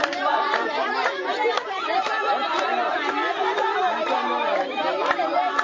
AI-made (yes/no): no